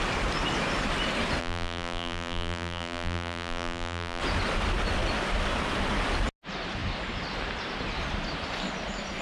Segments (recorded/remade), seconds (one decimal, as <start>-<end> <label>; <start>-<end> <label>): 0.0-1.4 recorded; 1.4-4.2 remade; 4.2-9.2 recorded

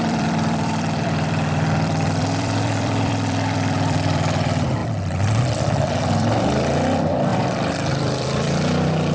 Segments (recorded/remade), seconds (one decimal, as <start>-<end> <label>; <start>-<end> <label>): 0.0-4.8 remade; 4.8-5.4 recorded; 5.4-9.1 remade

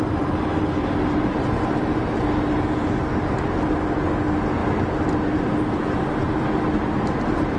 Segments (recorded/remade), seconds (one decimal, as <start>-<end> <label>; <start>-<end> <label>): 0.0-0.5 recorded; 0.5-1.3 remade; 1.3-7.6 recorded

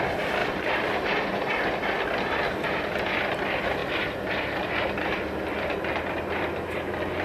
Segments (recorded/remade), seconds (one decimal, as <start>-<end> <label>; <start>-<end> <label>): 0.0-0.4 recorded; 0.4-1.5 remade; 1.5-7.2 recorded